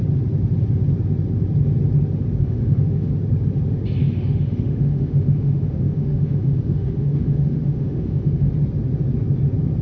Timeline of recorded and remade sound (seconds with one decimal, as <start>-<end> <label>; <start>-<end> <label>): 0.0-2.4 recorded; 2.4-3.1 remade; 3.1-4.0 recorded; 4.0-8.5 remade; 8.5-9.8 recorded